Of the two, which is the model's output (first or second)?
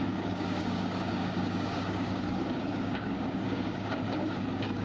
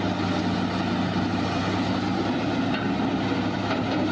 first